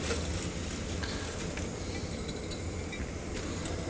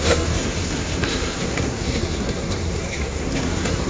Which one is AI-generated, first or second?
second